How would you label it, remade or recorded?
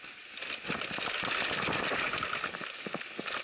recorded